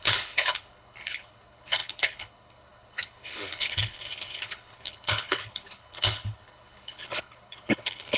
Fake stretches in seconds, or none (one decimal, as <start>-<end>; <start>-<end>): 0.0-8.2